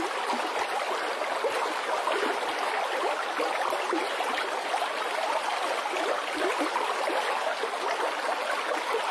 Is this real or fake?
real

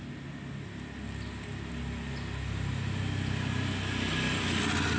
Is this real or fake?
real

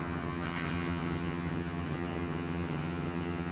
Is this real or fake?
fake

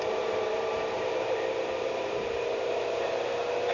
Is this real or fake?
fake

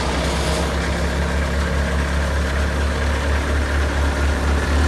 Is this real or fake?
real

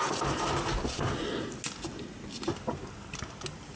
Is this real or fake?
real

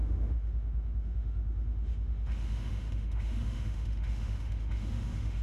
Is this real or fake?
fake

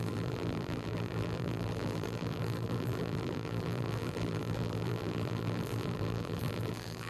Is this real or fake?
fake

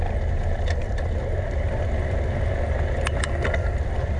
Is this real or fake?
real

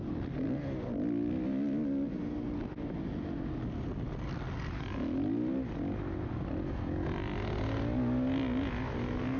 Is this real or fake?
real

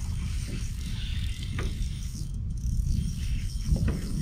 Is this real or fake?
fake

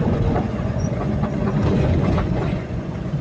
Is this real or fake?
fake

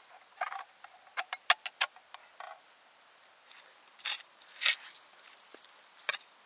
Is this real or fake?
real